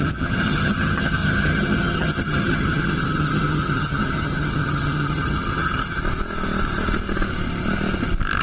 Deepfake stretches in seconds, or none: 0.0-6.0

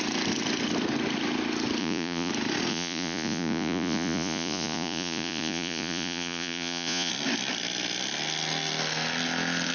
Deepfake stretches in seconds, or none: 1.8-2.3; 2.7-7.1

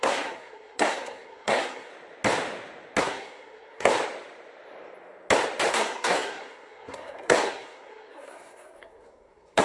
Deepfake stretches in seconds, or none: 0.0-1.9; 3.0-3.9; 5.7-9.6

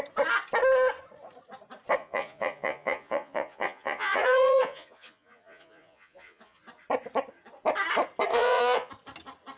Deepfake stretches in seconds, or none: 2.0-6.6; 8.3-8.9

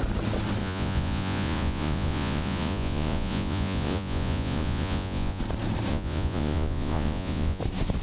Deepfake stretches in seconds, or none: 0.6-5.4; 5.9-7.6

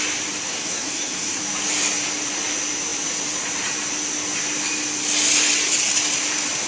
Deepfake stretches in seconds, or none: 0.5-1.4

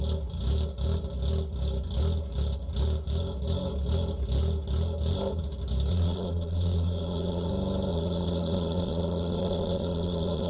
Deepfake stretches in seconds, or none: 5.9-7.5; 7.9-10.5

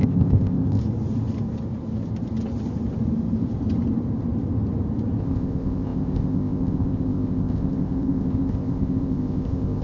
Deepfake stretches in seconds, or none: 0.0-0.8; 5.2-9.8